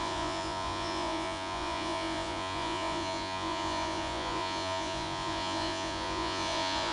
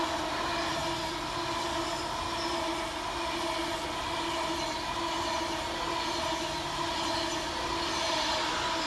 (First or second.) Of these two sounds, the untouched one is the second